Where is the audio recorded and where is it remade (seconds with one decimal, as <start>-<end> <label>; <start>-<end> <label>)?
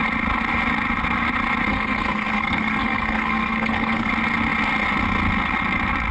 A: 0.0-1.7 recorded; 1.7-4.1 remade; 4.1-6.1 recorded